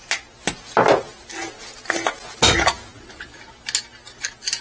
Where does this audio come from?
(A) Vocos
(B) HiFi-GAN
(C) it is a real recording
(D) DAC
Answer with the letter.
C